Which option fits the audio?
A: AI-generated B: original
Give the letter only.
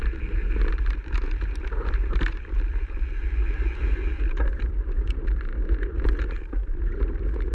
A